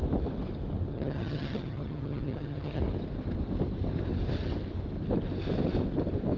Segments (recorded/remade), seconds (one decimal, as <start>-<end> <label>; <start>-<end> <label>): 0.0-0.9 recorded; 0.9-2.8 remade; 2.8-6.4 recorded